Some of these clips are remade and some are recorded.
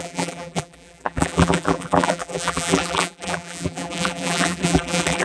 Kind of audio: remade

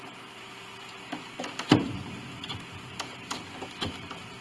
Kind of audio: recorded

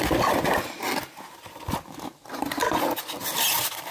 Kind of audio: recorded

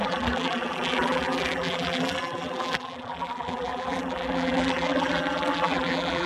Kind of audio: remade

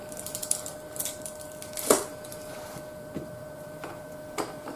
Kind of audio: remade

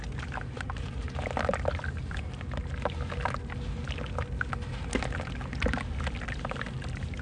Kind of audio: recorded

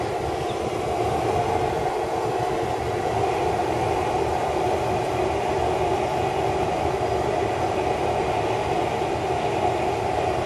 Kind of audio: recorded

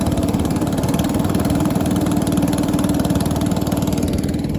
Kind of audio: remade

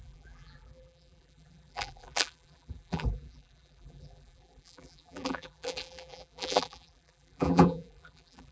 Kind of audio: remade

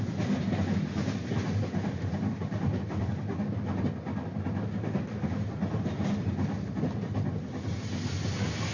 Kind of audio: remade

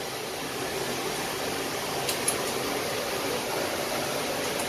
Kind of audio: recorded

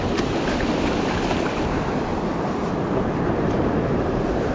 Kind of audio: recorded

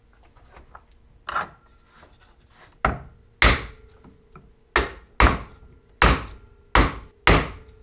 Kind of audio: recorded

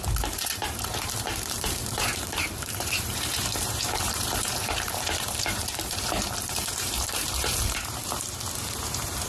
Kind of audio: remade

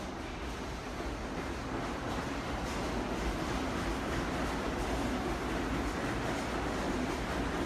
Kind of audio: recorded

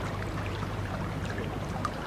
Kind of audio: remade